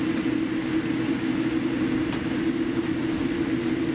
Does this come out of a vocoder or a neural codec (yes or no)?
no